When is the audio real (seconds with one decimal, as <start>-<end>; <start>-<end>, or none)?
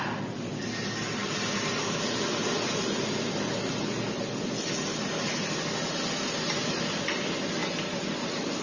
0.0-8.6